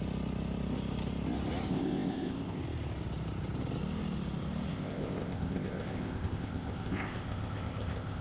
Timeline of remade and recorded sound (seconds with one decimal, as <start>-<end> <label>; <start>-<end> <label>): 0.0-1.7 recorded; 1.7-2.6 remade; 2.6-4.7 recorded; 4.7-8.2 remade